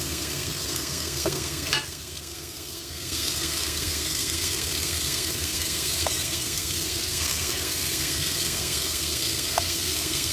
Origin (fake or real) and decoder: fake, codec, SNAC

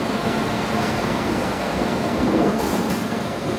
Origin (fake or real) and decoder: fake, codec, SNAC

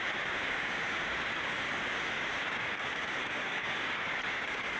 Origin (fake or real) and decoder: fake, codec, DAC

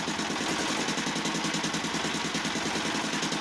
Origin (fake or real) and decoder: real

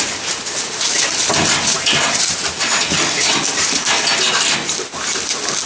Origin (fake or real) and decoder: real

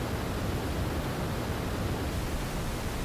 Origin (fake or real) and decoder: real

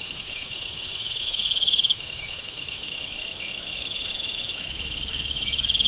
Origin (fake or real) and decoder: fake, autoencoder, DAC-VAE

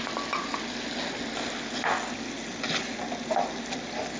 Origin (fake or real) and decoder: real